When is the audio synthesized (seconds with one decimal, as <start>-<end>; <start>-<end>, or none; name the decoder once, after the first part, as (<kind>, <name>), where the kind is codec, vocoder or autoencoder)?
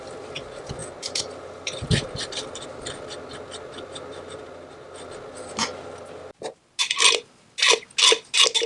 none